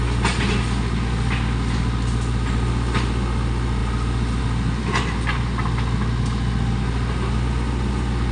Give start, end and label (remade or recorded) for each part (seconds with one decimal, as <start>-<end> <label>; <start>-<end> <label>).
0.0-3.8 recorded; 3.8-4.4 remade; 4.4-8.3 recorded